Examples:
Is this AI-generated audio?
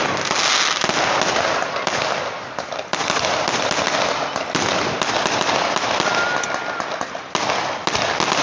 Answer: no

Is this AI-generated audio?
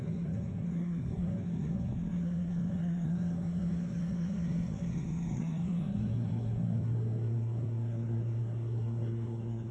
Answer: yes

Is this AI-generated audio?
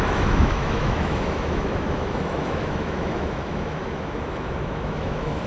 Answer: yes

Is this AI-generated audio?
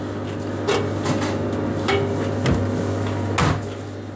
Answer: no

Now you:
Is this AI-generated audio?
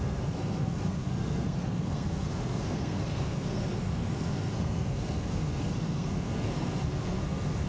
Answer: yes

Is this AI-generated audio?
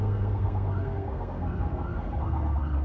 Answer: yes